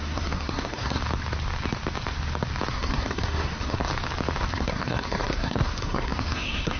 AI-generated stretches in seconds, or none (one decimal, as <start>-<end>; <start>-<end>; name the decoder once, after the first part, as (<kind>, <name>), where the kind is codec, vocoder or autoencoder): 0.0-1.0 (codec, SNAC); 2.7-3.8; 4.5-6.8